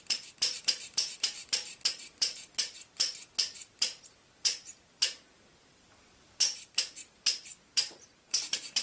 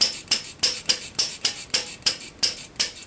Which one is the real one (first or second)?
second